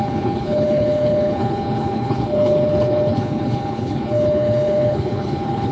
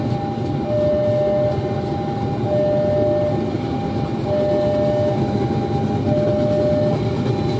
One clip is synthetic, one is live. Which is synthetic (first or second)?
first